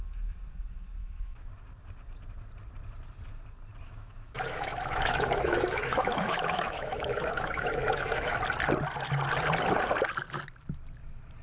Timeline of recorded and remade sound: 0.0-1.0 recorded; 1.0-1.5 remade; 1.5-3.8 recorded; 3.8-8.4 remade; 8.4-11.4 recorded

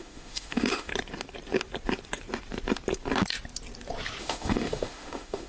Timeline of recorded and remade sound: 0.0-0.9 remade; 0.9-4.2 recorded; 4.2-5.5 remade